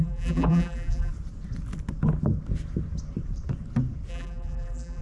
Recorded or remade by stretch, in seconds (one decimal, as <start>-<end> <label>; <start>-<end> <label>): 0.0-1.1 remade; 1.1-4.1 recorded; 4.1-5.0 remade